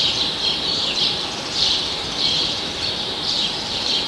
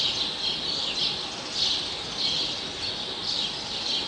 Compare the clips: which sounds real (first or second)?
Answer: second